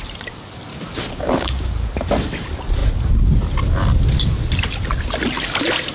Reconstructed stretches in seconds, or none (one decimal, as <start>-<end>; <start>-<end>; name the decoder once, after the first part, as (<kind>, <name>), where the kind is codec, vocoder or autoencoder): 0.7-1.7 (codec, DAC)